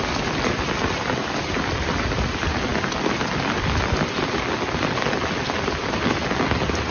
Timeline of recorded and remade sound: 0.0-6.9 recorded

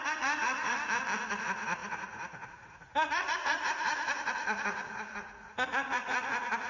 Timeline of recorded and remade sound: 0.0-0.8 remade; 0.8-1.3 recorded; 1.3-6.7 remade